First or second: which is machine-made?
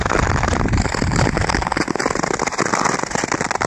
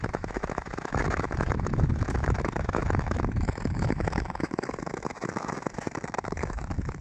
second